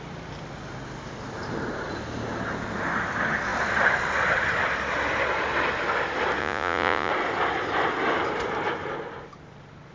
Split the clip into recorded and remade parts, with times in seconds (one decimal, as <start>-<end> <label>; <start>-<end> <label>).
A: 0.0-6.4 recorded; 6.4-7.1 remade; 7.1-9.9 recorded